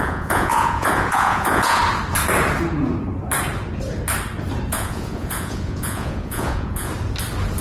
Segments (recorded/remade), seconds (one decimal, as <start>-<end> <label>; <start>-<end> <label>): 0.0-1.8 remade; 1.8-4.7 recorded; 4.7-6.9 remade; 6.9-7.6 recorded